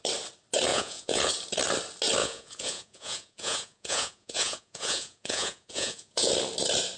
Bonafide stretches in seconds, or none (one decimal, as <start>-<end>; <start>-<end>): 0.0-0.7; 1.3-2.2; 6.3-7.0